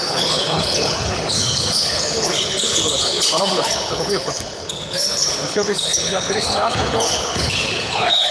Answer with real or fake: fake